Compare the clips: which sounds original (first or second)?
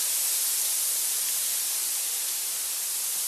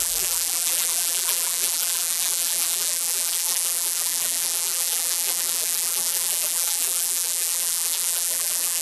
first